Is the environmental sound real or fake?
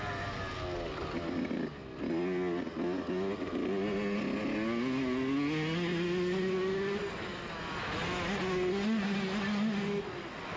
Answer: real